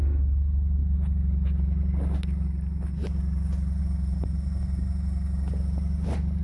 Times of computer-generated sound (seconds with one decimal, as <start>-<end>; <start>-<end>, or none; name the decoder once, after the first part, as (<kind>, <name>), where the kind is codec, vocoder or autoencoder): none